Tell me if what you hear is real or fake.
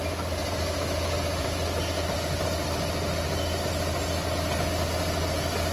real